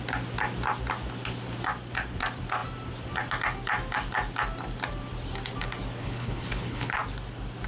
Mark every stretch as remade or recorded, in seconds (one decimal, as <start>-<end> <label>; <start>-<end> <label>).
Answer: 0.0-6.0 recorded; 6.0-6.9 remade; 6.9-7.7 recorded